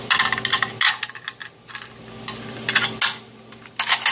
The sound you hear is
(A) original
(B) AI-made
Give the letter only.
A